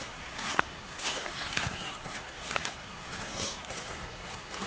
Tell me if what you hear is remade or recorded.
remade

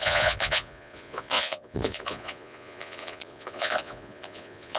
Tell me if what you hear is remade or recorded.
remade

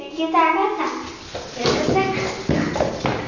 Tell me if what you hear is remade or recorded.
recorded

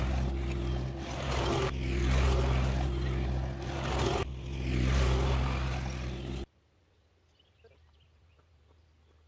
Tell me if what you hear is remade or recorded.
recorded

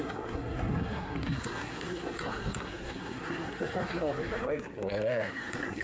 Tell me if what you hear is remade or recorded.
remade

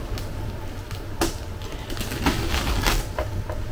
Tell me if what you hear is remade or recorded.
recorded